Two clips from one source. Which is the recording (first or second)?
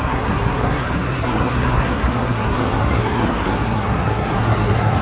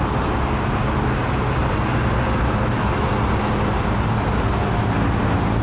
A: second